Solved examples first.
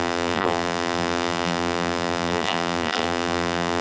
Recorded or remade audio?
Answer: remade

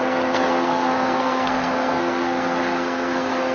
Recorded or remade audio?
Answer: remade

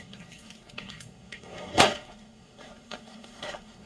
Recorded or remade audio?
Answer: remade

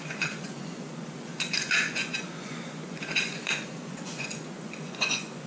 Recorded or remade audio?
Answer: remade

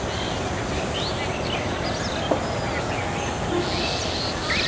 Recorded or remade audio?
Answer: recorded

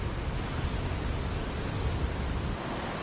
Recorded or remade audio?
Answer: recorded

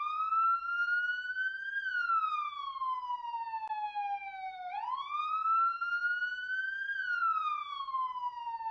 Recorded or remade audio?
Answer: recorded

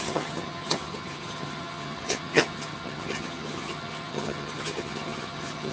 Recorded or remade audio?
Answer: remade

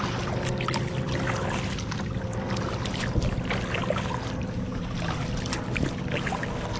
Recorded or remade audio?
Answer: recorded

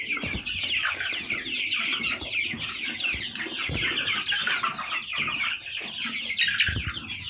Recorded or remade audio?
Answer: recorded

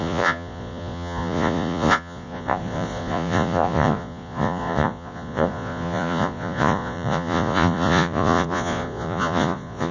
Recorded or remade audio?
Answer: remade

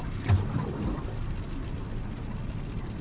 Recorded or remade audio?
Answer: recorded